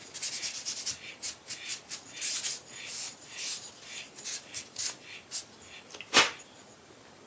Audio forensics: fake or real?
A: real